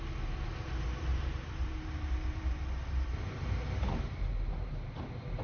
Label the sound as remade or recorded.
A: remade